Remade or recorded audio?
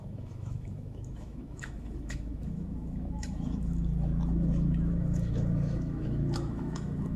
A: remade